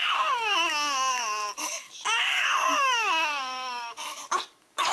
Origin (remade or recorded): remade